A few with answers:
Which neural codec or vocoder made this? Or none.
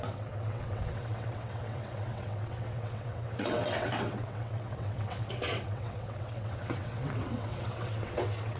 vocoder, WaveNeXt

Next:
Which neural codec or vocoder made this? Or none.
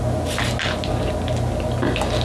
none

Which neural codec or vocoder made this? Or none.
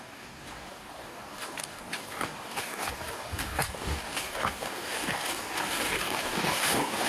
codec, DAC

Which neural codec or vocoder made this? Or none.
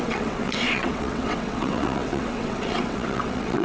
vocoder, WaveNeXt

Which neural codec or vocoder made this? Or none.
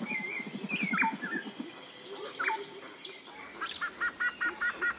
vocoder, BigVGAN v2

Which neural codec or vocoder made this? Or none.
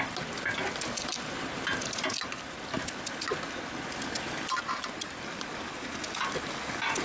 none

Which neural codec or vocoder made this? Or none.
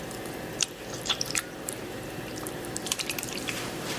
vocoder, BigVGAN v2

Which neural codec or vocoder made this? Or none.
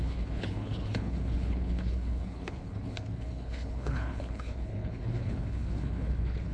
codec, HILCodec